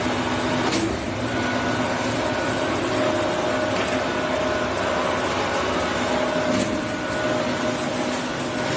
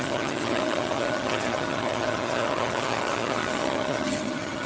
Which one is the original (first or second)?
first